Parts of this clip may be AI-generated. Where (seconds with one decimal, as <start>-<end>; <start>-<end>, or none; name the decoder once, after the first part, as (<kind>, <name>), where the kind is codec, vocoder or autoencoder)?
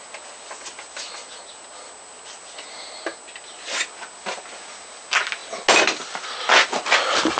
none